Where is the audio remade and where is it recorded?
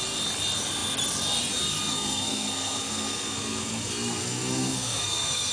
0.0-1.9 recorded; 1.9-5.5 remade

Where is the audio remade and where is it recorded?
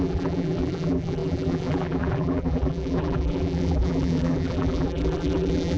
0.0-5.8 remade